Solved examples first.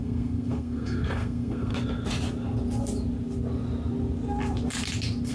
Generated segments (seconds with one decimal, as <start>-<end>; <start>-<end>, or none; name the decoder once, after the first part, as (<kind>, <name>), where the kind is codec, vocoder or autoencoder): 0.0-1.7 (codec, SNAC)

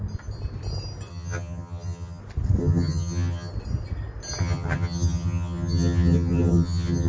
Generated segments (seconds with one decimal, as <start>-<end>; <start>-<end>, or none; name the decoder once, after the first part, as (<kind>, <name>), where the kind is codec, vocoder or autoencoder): 1.1-2.2 (vocoder, HiFi-GAN); 2.6-3.5; 4.4-7.1

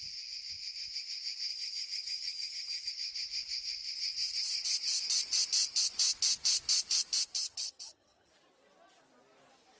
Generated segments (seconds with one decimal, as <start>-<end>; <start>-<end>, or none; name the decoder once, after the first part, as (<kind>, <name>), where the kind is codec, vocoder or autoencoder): 1.5-2.9 (vocoder, HiFi-GAN); 7.4-8.3